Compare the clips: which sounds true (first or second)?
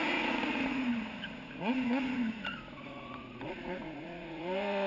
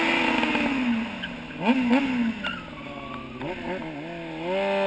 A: second